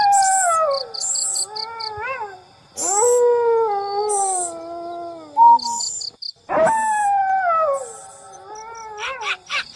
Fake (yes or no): no